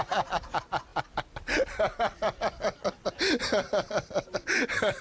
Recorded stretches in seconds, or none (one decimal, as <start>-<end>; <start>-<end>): 0.0-5.0